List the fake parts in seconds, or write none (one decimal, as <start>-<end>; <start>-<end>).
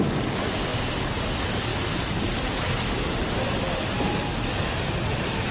none